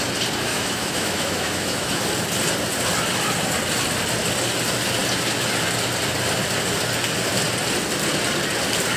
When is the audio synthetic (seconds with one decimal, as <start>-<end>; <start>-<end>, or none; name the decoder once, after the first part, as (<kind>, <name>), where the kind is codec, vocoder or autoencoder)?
0.5-2.0 (autoencoder, DAC-VAE)